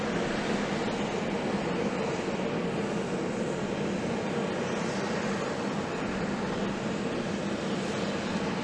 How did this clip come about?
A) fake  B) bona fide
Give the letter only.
B